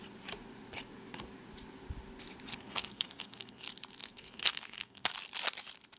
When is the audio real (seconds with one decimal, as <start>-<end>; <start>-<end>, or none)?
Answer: 0.0-2.5; 3.6-4.0; 5.1-6.0